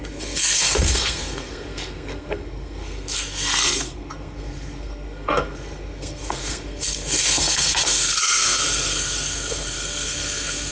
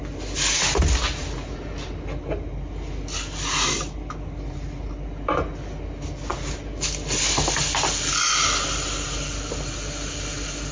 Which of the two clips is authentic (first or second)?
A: second